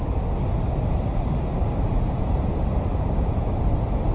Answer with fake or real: real